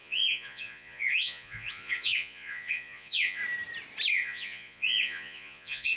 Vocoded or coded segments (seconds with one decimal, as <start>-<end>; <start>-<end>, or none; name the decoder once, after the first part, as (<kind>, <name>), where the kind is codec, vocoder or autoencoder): 0.0-3.4 (vocoder, Vocos); 4.1-6.0